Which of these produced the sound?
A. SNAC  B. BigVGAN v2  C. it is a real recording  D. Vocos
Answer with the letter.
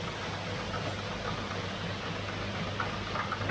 C